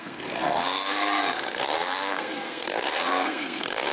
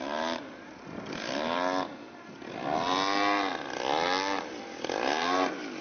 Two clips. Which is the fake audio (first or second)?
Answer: first